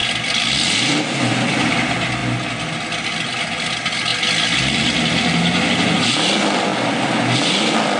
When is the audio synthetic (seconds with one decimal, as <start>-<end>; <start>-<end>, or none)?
none